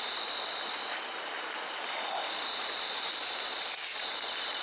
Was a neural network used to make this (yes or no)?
no